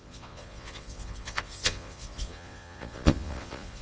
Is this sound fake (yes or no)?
yes